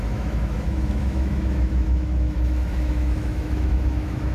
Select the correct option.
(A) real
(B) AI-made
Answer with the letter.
B